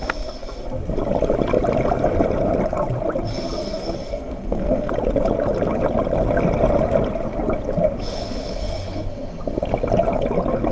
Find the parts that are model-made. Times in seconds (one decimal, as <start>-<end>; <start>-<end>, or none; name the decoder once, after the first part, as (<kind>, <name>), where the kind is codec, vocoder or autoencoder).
3.6-4.9 (codec, SNAC); 8.6-9.4